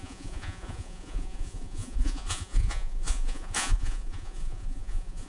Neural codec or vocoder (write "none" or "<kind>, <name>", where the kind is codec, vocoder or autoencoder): vocoder, Vocos